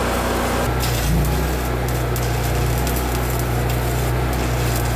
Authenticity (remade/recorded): recorded